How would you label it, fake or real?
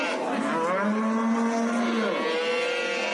real